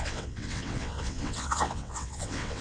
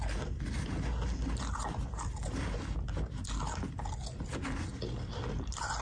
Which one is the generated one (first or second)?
first